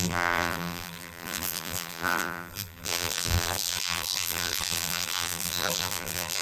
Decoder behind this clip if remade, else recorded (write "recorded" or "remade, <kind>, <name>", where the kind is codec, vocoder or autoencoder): remade, vocoder, BigVGAN v2